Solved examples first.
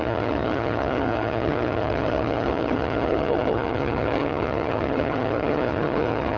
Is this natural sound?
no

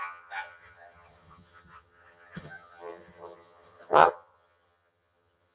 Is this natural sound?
no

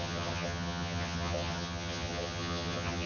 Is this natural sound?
no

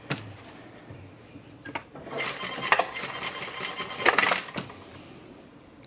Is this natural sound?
yes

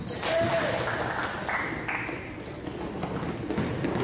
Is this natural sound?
yes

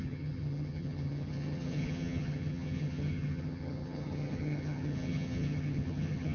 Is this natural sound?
no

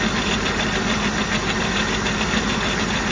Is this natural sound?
yes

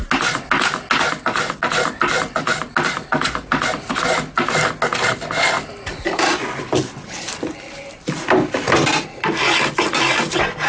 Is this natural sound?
yes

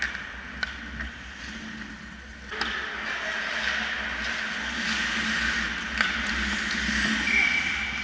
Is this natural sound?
yes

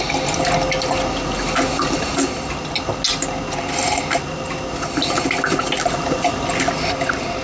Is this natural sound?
yes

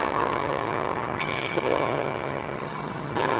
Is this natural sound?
no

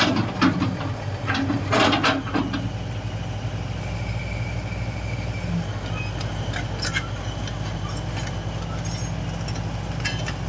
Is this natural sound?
yes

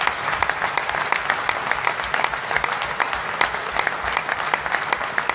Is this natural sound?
yes